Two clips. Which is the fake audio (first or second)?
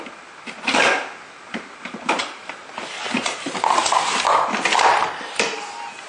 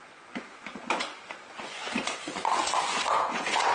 second